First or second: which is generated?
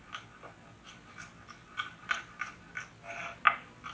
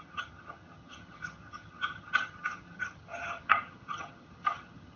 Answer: second